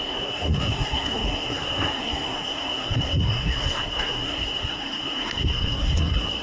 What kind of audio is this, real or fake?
fake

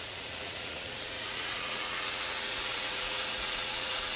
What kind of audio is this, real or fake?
fake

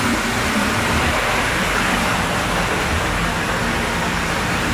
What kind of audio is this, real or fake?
fake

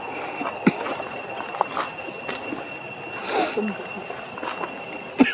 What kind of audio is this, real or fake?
real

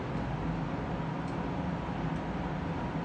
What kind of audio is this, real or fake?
real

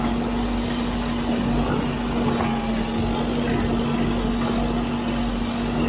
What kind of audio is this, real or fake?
real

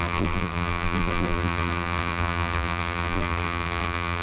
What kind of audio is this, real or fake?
fake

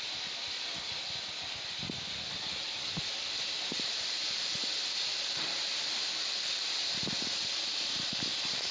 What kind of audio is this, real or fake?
fake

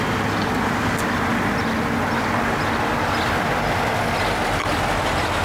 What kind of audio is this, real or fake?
real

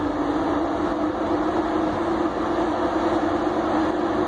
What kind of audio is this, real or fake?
real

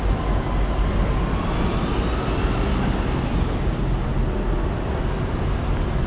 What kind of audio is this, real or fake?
real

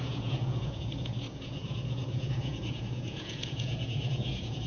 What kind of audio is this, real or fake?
fake